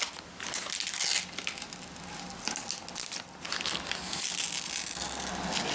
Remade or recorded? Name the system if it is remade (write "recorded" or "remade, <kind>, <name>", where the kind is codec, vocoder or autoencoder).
recorded